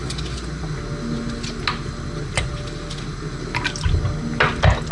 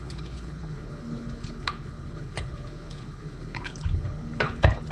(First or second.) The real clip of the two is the first